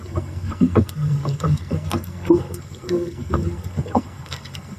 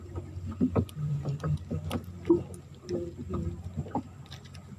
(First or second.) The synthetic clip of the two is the first